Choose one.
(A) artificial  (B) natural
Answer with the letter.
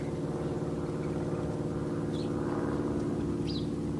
B